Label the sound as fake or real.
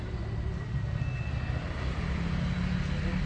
real